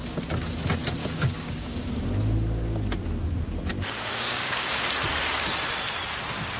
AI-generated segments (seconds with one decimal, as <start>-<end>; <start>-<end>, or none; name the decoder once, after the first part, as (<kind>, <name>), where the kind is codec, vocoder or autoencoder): 1.0-1.9 (codec, DAC); 3.7-4.9